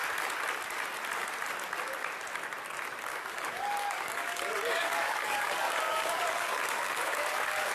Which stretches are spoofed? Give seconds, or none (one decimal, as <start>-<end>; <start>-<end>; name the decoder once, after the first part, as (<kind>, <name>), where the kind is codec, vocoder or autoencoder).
3.1-7.7 (codec, DAC)